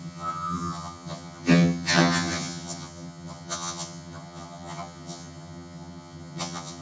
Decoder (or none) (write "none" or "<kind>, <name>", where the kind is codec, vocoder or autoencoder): vocoder, HiFi-GAN